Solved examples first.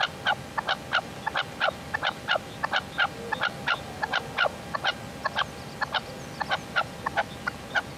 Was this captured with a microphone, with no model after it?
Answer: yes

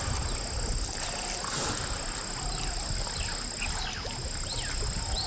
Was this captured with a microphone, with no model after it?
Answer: yes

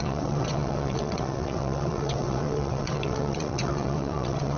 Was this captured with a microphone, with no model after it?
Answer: no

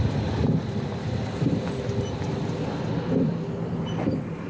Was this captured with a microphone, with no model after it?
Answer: yes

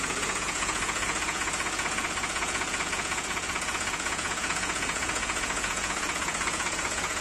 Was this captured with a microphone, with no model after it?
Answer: no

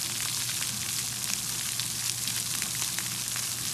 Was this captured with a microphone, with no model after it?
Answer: yes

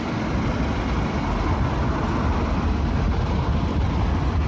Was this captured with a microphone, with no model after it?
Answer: yes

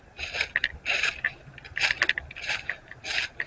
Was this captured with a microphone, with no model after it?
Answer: yes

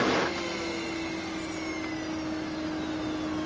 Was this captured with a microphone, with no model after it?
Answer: yes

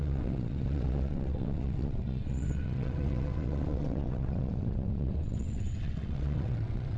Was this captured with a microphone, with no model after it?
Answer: no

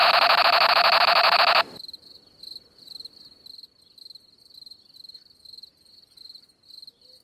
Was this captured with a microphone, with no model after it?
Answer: yes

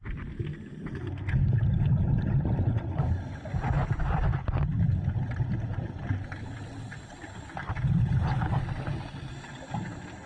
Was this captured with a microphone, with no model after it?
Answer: yes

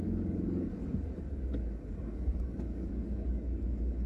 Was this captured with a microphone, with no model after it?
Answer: no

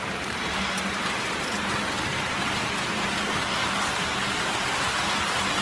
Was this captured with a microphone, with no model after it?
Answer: no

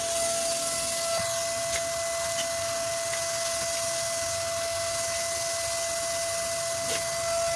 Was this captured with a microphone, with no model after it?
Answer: yes